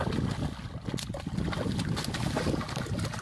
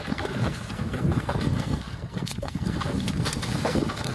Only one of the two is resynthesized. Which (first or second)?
second